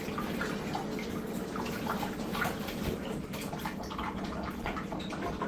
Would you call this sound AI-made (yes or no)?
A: no